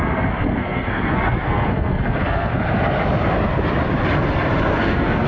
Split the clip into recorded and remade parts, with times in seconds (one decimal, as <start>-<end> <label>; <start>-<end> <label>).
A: 0.0-2.5 remade; 2.5-4.8 recorded; 4.8-5.3 remade